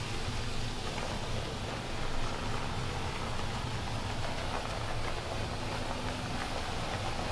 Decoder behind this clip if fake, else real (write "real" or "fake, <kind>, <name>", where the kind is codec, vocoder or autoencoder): real